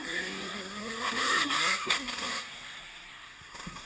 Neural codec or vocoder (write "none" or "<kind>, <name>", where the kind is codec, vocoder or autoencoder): codec, SNAC